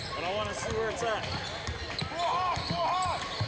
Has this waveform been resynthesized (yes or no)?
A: no